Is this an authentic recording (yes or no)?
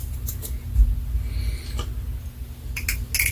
yes